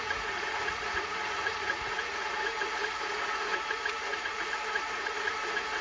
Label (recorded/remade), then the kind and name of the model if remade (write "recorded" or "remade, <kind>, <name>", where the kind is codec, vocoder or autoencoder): remade, vocoder, Vocos